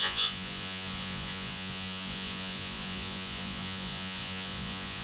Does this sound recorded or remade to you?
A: remade